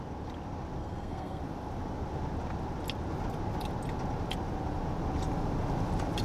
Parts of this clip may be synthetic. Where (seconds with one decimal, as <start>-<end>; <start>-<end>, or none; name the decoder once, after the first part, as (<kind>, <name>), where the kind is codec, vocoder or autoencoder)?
0.8-1.4 (codec, SNAC)